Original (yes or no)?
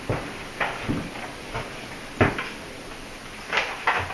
yes